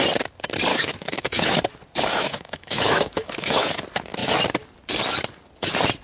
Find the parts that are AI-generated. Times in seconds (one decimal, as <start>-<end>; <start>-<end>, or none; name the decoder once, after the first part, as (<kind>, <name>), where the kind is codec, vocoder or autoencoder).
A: 0.7-1.6 (autoencoder, DAC-VAE); 2.1-3.8